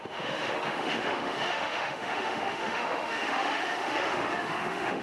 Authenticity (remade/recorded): remade